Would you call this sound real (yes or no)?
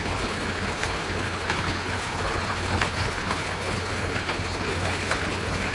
no